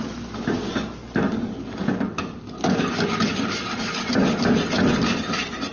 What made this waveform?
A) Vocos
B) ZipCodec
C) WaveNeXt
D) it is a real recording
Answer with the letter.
D